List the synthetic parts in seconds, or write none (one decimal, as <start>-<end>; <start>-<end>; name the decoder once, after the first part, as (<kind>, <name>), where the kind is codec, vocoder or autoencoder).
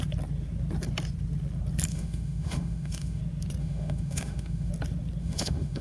1.9-3.2 (autoencoder, DAC-VAE); 3.6-4.7; 5.2-5.8